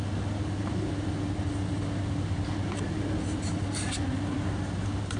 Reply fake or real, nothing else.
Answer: real